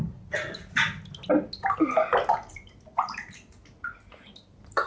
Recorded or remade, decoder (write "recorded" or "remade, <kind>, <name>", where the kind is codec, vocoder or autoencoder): recorded